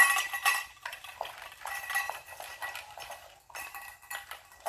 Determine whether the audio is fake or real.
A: fake